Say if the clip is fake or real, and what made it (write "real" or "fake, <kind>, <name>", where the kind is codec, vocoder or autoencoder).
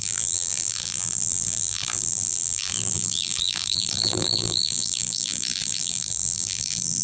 fake, vocoder, BigVGAN v2